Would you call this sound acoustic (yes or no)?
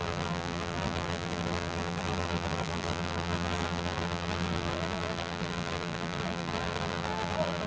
no